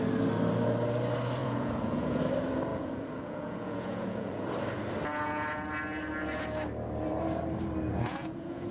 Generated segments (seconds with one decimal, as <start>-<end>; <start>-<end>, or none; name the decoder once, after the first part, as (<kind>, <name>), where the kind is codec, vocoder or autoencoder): 1.4-2.2 (vocoder, Vocos); 2.7-4.4; 7.9-8.7